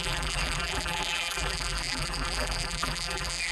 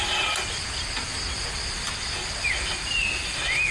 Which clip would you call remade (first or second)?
first